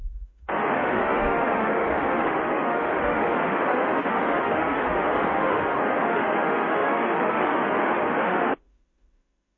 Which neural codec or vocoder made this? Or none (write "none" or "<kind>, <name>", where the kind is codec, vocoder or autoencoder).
autoencoder, DAC-VAE